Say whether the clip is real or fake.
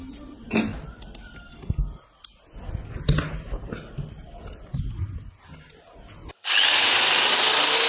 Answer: real